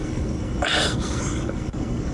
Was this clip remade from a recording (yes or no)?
yes